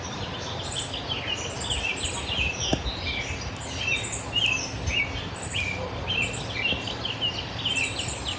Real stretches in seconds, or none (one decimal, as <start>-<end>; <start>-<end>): 0.0-8.4